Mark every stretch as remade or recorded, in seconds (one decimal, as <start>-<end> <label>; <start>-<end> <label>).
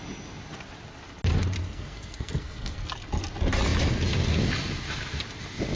0.0-1.6 recorded; 1.6-2.9 remade; 2.9-5.8 recorded